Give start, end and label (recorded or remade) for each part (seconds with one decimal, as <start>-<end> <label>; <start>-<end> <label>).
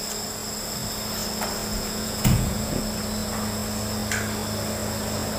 0.0-1.7 recorded; 1.7-2.8 remade; 2.8-5.4 recorded